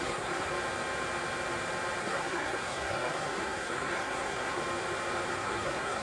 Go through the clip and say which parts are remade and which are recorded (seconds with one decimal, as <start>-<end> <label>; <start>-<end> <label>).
0.0-0.5 remade; 0.5-2.0 recorded; 2.0-4.6 remade; 4.6-5.3 recorded; 5.3-6.0 remade